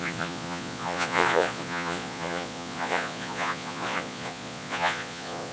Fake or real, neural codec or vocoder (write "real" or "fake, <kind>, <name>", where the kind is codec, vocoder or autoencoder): fake, vocoder, Vocos